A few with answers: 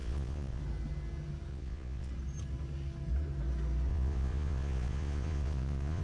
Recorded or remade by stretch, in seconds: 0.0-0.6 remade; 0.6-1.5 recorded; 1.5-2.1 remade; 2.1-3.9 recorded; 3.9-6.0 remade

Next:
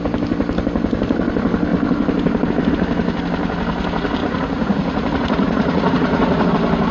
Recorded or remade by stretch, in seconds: 0.0-4.2 recorded; 4.2-6.5 remade; 6.5-6.9 recorded

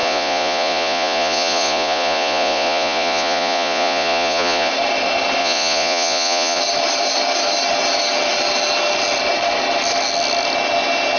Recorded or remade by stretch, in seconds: 0.0-4.7 remade; 4.7-5.4 recorded; 5.4-6.6 remade; 6.6-11.2 recorded

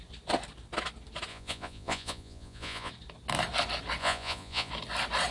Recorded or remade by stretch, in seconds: 0.0-1.3 recorded; 1.3-2.9 remade; 2.9-4.0 recorded; 4.0-4.7 remade; 4.7-5.3 recorded

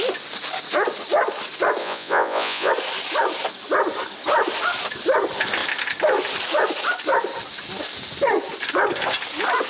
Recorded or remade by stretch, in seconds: 0.0-1.8 recorded; 1.8-2.7 remade; 2.7-9.7 recorded